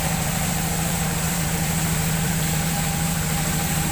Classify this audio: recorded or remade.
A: remade